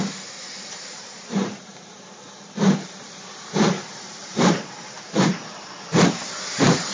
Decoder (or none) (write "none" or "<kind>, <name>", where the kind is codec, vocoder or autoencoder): vocoder, BigVGAN v2